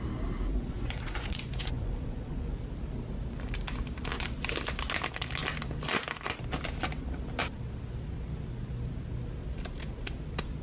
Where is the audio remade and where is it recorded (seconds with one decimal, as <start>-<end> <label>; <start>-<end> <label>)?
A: 0.0-0.5 recorded; 0.5-2.6 remade; 2.6-10.6 recorded